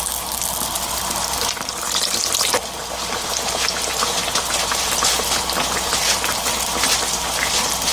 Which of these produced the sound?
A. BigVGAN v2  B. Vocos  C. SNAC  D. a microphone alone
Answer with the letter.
D